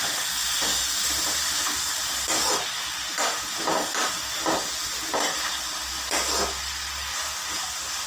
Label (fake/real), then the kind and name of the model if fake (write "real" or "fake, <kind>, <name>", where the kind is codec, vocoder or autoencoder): real